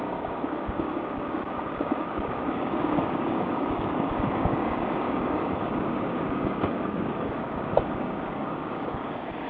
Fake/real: fake